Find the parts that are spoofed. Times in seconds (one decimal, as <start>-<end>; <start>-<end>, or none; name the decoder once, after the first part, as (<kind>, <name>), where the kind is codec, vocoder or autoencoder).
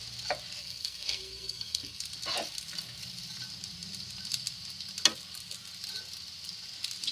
0.6-2.0 (codec, SNAC)